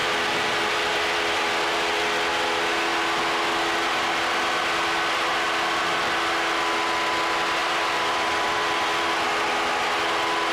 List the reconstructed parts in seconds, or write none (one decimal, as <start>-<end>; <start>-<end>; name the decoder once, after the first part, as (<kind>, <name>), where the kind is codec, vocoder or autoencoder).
0.0-1.5 (vocoder, BigVGAN v2); 7.6-9.1